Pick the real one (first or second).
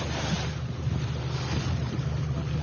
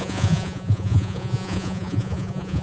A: first